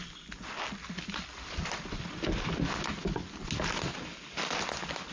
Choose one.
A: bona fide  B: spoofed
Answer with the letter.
A